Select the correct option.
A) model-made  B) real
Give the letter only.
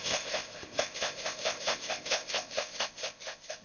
A